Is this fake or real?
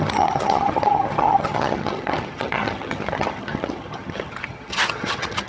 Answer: fake